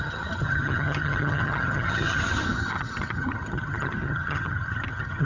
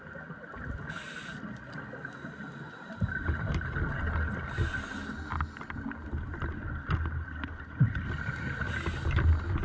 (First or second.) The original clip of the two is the second